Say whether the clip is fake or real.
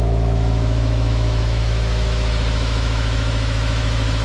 fake